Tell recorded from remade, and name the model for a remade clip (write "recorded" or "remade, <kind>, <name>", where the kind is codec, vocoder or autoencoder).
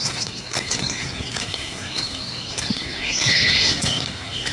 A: remade, codec, SNAC